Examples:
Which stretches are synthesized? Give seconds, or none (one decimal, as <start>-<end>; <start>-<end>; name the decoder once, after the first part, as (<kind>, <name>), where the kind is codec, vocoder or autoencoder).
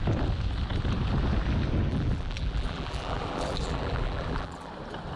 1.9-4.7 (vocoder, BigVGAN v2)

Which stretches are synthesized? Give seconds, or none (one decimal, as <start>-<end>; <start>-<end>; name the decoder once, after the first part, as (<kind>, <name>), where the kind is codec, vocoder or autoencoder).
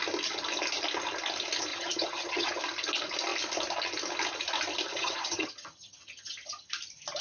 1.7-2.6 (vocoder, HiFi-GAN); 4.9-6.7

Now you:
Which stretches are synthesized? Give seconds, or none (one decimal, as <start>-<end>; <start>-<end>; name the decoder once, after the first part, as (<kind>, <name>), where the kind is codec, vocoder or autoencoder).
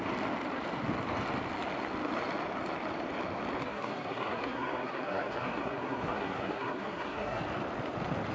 3.6-7.4 (codec, SNAC)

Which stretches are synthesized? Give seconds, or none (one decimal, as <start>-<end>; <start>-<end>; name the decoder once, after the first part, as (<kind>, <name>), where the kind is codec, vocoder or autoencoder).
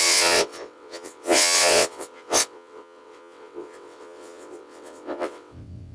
0.0-5.9 (vocoder, WaveNeXt)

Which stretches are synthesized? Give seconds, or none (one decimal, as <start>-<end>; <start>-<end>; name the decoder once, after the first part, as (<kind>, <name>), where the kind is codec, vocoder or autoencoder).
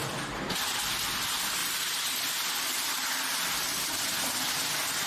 none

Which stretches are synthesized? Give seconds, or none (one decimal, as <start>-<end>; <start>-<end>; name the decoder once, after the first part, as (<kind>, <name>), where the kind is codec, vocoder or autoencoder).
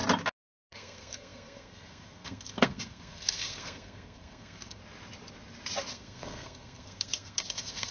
0.7-4.8 (codec, SNAC); 5.9-7.9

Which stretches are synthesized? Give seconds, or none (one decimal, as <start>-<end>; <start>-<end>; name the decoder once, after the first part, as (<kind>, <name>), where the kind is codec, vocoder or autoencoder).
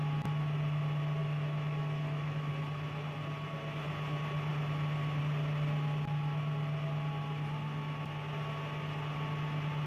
1.2-2.5 (autoencoder, DAC-VAE)